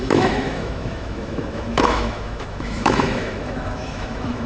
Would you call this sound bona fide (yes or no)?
no